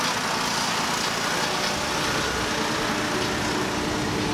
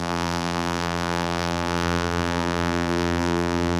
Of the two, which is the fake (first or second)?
second